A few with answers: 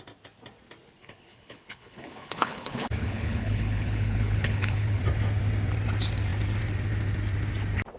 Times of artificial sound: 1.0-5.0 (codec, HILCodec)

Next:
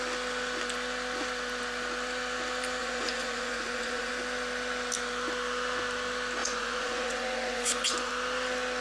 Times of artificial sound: 2.8-4.1 (vocoder, Vocos); 6.4-8.1